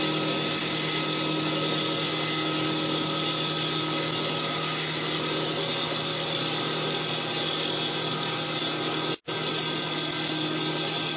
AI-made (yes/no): no